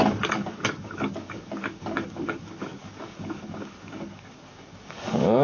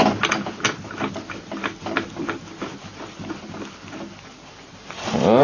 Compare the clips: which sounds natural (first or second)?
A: second